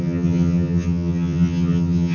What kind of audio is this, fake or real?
fake